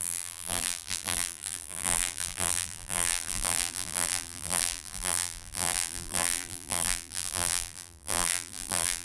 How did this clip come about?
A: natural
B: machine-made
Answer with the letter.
B